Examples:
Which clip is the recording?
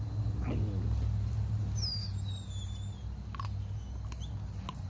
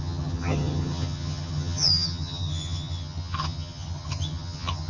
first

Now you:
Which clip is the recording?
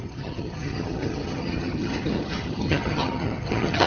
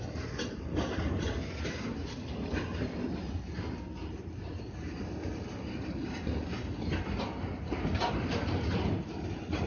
second